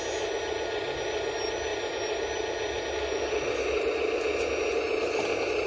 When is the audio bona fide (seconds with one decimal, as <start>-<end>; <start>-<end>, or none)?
0.0-5.7